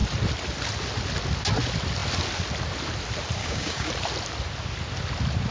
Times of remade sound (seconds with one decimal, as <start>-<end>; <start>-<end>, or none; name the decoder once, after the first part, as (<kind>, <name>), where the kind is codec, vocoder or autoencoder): 3.4-3.9 (codec, DAC)

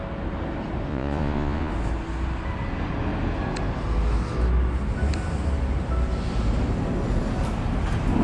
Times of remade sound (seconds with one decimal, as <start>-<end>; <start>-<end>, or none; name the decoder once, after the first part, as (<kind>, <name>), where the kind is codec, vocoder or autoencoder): 0.9-1.7 (vocoder, Vocos)

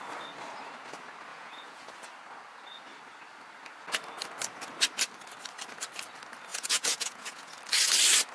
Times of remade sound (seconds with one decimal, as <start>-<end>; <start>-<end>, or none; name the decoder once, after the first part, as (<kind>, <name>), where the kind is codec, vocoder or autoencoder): 1.3-1.9 (vocoder, Vocos); 6.5-7.5

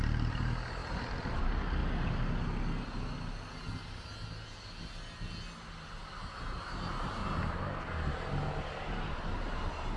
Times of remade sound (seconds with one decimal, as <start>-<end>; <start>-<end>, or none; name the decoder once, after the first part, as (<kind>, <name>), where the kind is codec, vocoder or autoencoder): 0.0-1.8 (vocoder, BigVGAN v2); 6.6-7.2; 8.8-10.0

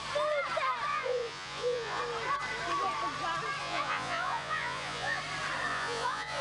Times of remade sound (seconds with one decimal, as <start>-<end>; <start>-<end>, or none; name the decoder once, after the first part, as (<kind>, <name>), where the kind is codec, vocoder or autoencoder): 0.9-2.0 (vocoder, Vocos); 3.6-5.2; 5.7-6.4

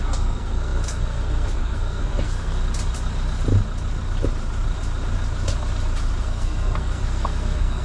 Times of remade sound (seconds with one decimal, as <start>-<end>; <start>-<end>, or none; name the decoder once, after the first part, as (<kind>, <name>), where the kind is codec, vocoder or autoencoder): 0.0-2.6 (codec, SNAC); 6.2-7.8

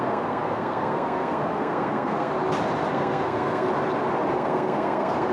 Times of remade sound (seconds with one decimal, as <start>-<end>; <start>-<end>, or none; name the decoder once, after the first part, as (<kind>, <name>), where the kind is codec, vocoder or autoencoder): 0.0-2.3 (codec, SNAC); 2.9-3.7; 4.3-5.3